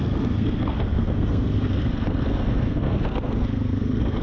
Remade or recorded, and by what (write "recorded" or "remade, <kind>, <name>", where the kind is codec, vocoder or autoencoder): remade, codec, SNAC